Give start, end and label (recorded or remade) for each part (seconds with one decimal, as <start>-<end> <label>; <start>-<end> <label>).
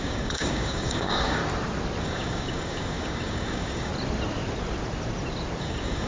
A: 0.0-1.4 remade; 1.4-2.0 recorded; 2.0-3.9 remade; 3.9-5.6 recorded; 5.6-6.1 remade